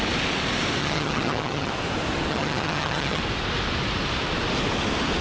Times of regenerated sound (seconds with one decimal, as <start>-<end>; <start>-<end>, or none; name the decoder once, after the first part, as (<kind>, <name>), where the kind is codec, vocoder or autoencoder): 0.8-1.7 (vocoder, HiFi-GAN); 2.3-3.2